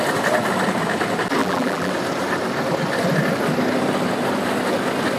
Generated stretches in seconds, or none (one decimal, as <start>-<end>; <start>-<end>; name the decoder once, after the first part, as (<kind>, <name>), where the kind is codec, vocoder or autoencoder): 1.4-1.9 (vocoder, BigVGAN v2)